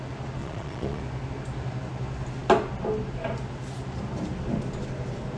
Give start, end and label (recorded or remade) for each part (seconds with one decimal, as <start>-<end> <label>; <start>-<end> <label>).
0.0-0.4 recorded; 0.4-1.0 remade; 1.0-5.4 recorded